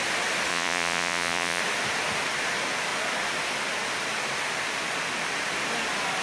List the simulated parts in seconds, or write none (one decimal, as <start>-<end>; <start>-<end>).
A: 0.5-1.6